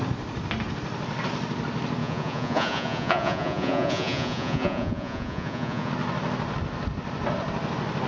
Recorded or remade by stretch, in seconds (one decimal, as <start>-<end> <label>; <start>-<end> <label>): 0.0-2.0 recorded; 2.0-5.9 remade; 5.9-8.1 recorded